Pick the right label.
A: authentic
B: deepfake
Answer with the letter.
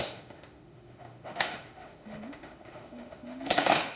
B